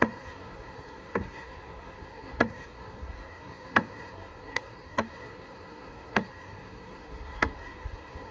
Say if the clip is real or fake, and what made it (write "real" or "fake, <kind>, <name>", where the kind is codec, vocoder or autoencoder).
fake, codec, SNAC